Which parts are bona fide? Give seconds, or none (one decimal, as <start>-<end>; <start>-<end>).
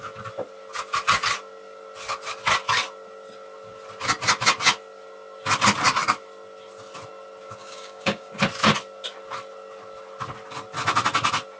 0.0-7.6; 8.3-11.6